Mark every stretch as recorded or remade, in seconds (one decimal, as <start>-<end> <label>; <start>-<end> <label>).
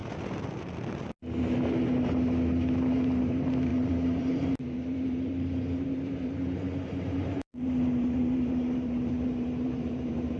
0.0-3.2 recorded; 3.2-10.4 remade